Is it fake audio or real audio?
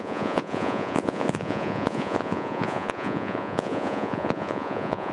fake